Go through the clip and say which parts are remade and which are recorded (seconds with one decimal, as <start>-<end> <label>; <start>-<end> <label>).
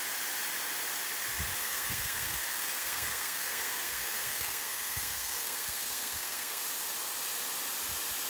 0.0-1.6 recorded; 1.6-6.6 remade; 6.6-8.3 recorded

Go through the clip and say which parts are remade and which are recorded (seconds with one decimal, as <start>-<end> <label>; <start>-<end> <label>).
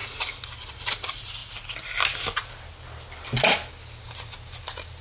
0.0-5.0 recorded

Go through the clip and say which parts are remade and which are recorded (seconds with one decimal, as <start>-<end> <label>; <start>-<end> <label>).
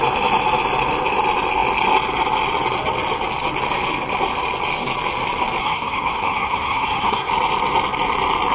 0.0-5.6 recorded; 5.6-7.3 remade; 7.3-8.5 recorded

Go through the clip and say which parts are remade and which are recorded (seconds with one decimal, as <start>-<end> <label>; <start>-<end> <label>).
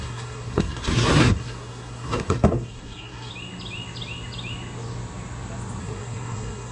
0.0-3.3 remade; 3.3-5.8 recorded; 5.8-6.7 remade